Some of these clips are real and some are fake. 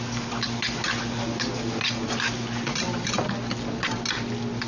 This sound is real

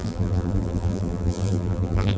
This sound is fake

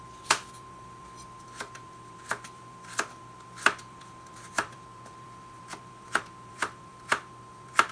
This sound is fake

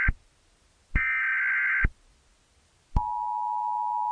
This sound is real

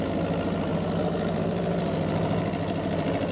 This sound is real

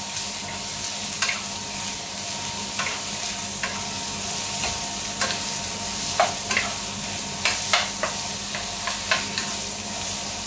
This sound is real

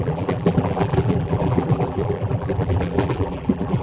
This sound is fake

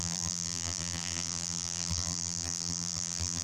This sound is fake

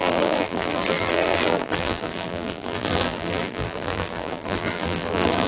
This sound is fake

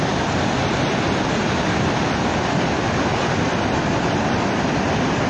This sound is fake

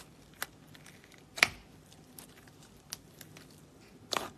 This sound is real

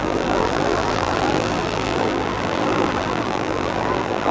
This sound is fake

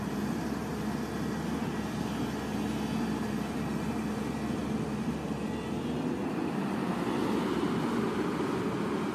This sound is real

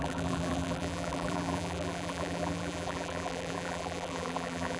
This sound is fake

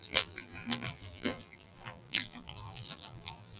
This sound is fake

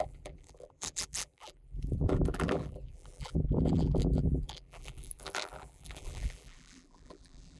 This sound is fake